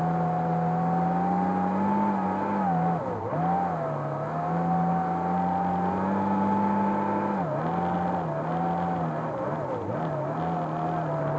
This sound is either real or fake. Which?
real